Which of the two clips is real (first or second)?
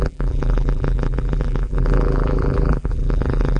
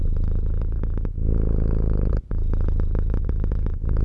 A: second